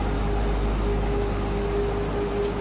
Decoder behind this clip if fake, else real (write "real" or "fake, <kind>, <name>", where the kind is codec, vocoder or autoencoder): real